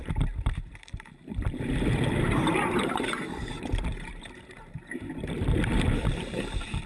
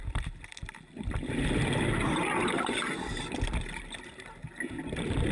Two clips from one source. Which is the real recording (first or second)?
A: second